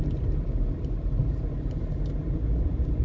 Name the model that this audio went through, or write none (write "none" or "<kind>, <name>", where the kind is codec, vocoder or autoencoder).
none